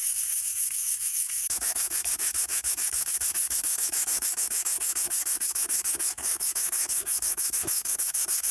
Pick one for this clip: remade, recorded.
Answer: remade